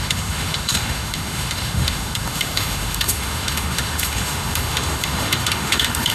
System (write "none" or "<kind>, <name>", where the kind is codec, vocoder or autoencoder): autoencoder, DAC-VAE